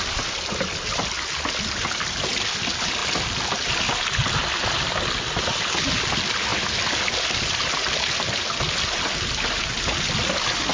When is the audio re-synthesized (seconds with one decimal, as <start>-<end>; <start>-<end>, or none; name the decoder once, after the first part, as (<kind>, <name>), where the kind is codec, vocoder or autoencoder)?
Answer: none